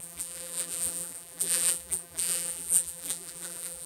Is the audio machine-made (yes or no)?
yes